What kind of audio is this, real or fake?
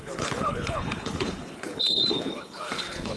fake